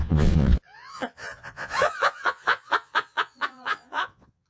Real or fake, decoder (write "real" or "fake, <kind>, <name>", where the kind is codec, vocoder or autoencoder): fake, vocoder, Vocos